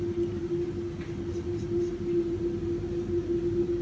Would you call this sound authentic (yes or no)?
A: yes